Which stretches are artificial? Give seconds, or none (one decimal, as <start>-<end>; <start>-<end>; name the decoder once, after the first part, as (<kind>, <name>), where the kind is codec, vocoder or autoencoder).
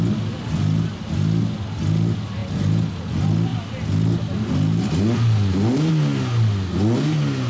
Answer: none